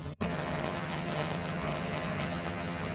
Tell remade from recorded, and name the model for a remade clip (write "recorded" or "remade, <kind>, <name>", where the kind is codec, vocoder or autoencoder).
remade, vocoder, HiFi-GAN